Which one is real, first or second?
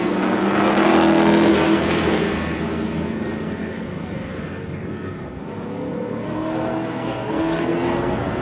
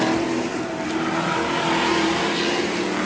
second